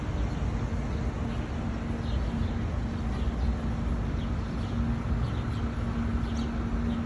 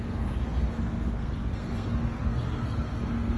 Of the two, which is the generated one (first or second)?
second